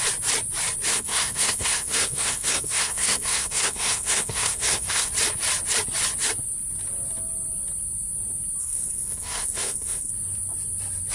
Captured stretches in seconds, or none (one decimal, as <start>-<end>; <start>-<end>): 0.0-0.9; 5.1-8.6; 10.1-11.1